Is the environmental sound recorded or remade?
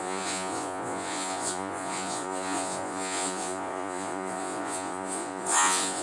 remade